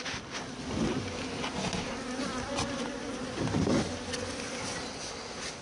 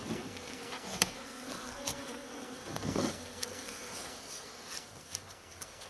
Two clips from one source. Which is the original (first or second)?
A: first